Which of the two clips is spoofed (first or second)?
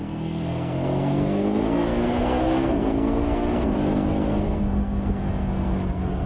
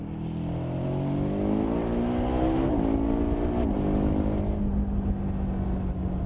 first